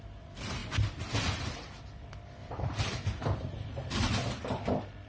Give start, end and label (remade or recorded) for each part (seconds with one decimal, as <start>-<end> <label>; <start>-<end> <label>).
0.0-2.4 recorded; 2.4-4.0 remade; 4.0-5.1 recorded